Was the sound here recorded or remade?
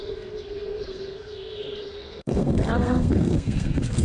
remade